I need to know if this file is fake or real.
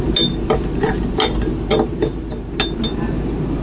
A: real